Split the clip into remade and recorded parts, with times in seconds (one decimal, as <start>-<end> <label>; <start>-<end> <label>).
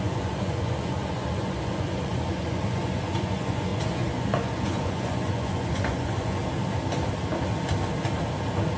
0.0-6.4 remade; 6.4-8.8 recorded